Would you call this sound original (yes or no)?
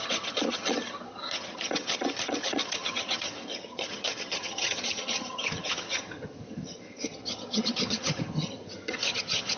no